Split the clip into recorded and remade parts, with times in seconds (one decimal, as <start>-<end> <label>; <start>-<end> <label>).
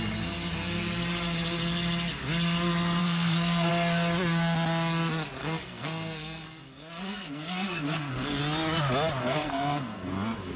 0.0-3.0 recorded; 3.0-3.7 remade; 3.7-5.4 recorded; 5.4-8.4 remade; 8.4-9.2 recorded; 9.2-10.1 remade; 10.1-10.6 recorded